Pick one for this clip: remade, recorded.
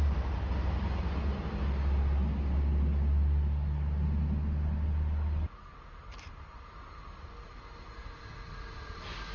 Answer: recorded